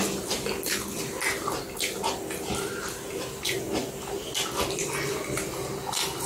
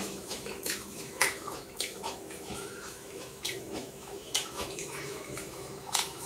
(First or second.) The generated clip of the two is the second